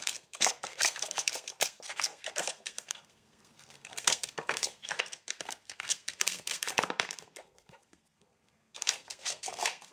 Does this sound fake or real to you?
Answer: fake